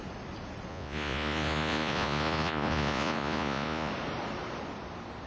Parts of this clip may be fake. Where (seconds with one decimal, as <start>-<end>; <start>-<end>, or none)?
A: 0.7-3.9